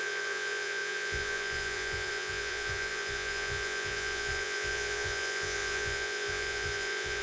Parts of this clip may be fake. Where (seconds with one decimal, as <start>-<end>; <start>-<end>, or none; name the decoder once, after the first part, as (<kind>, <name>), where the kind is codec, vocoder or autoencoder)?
0.0-7.2 (vocoder, Vocos)